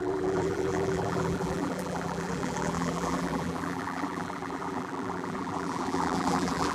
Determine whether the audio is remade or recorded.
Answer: remade